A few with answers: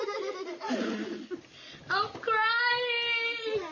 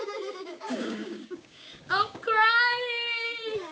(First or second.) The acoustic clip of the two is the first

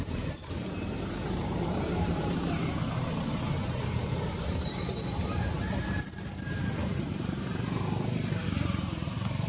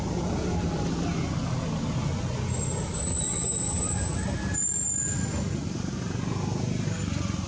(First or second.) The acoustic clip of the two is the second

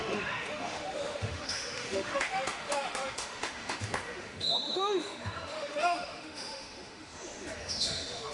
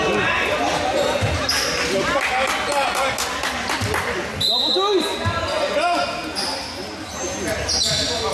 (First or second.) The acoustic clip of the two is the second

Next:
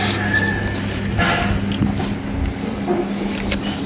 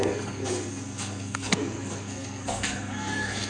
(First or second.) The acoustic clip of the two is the first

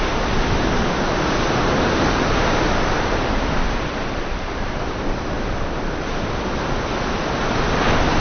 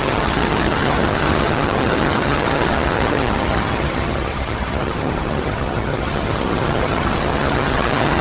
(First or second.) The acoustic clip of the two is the first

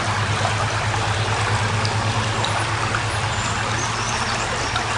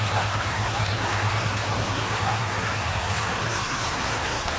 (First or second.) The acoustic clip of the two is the first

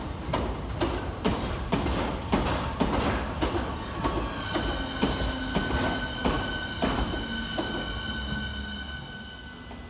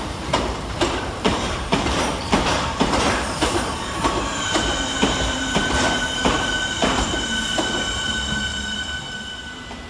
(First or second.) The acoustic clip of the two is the first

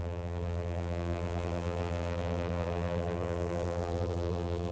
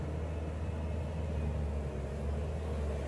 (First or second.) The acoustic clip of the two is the second